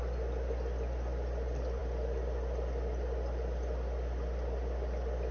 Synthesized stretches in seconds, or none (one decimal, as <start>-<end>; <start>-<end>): none